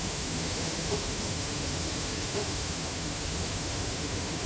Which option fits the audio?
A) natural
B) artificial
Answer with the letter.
B